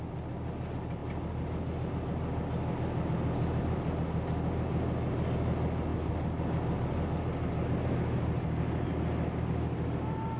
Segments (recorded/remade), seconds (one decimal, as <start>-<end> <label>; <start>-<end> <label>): 0.0-10.4 recorded